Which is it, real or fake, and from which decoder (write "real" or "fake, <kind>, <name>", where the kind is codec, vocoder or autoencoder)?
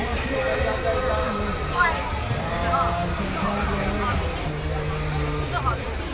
real